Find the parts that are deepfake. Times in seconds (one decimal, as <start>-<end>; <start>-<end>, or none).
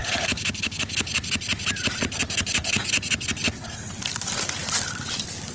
none